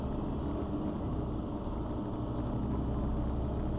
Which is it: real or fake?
real